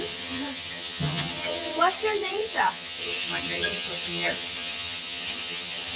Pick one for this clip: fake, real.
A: fake